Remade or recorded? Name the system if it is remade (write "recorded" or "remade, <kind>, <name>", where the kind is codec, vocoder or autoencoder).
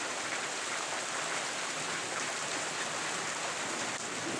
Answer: remade, vocoder, BigVGAN v2